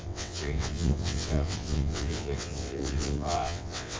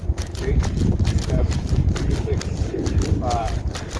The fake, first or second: first